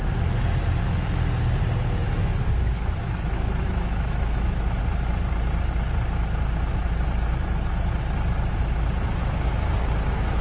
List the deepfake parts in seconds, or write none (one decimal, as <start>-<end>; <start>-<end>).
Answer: 2.0-4.8